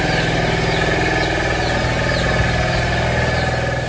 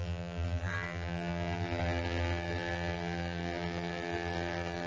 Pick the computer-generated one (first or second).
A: second